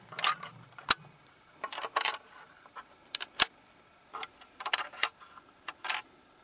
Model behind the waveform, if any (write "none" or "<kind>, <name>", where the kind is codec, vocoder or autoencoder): none